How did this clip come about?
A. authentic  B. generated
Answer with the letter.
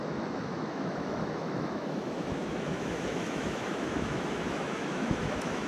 B